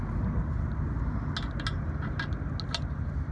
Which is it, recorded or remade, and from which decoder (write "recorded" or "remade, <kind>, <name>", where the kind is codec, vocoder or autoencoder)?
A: recorded